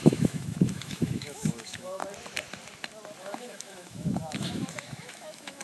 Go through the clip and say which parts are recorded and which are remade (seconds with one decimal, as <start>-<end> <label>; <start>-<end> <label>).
0.0-2.0 remade; 2.0-3.2 recorded; 3.2-5.6 remade